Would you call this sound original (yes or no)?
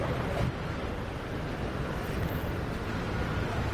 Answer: yes